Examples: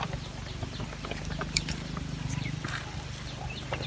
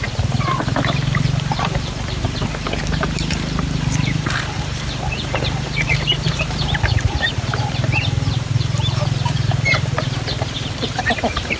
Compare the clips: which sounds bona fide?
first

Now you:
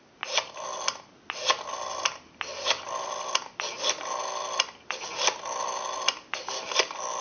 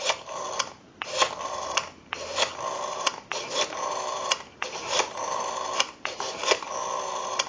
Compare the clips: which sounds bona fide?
first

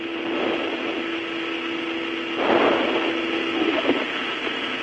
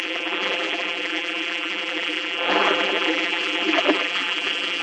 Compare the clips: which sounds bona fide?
first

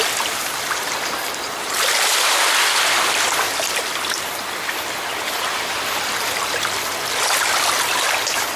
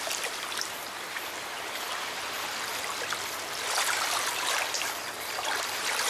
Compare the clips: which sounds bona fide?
second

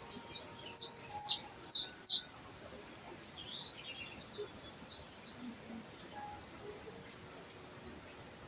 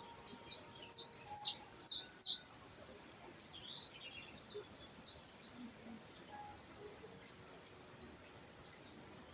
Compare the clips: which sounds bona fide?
first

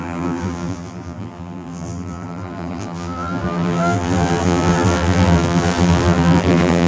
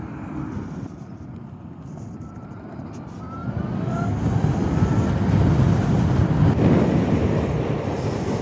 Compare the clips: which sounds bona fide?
second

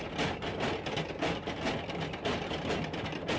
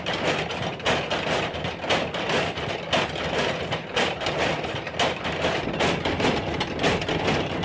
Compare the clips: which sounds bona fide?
first